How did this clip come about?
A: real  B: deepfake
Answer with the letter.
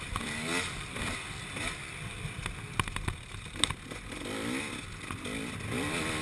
A